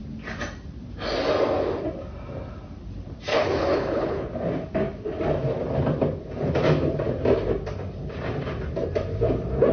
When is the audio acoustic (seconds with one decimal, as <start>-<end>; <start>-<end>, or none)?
0.0-3.3; 4.3-9.7